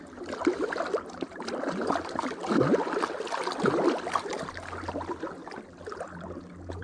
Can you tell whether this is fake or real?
real